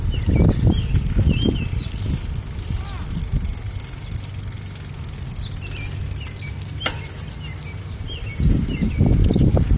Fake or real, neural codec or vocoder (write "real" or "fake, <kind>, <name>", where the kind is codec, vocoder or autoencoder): real